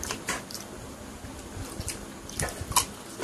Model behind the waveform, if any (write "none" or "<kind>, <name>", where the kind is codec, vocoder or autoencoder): none